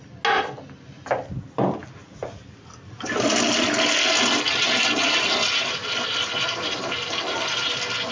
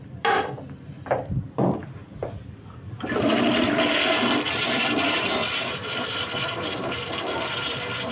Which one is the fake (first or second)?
second